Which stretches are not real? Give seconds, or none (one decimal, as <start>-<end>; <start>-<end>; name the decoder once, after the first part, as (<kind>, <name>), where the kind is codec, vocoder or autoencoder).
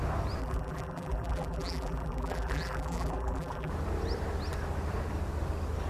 0.4-3.7 (vocoder, BigVGAN v2)